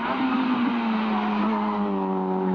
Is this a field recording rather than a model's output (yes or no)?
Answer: yes